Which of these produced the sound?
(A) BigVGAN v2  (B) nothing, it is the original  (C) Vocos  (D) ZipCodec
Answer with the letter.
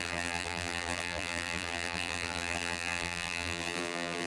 A